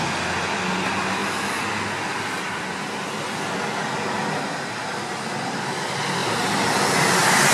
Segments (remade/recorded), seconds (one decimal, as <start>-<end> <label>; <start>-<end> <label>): 0.0-7.5 recorded